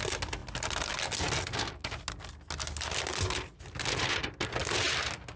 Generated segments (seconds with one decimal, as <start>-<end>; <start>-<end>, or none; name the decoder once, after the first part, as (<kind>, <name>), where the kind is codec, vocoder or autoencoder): none